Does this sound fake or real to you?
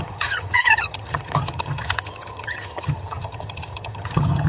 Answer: fake